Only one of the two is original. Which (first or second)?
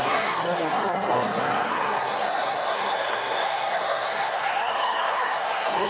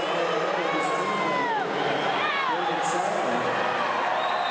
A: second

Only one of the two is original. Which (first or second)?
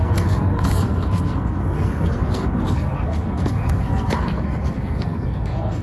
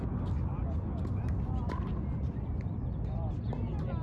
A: second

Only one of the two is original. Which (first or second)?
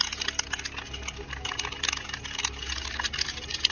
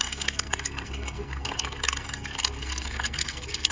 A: first